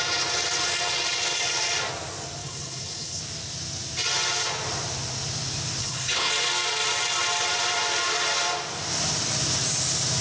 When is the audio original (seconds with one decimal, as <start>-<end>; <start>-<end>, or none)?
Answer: 0.0-2.4; 3.2-5.8; 6.3-10.2